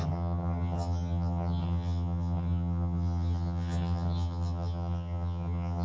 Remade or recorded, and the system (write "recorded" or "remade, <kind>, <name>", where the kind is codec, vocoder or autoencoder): remade, vocoder, HiFi-GAN